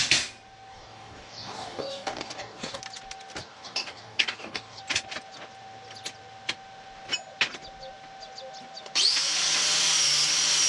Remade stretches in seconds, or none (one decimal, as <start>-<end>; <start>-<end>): 0.7-2.8; 3.4-4.8